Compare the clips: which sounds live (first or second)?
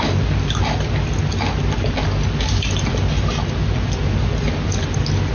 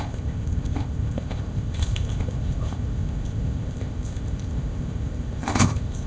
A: first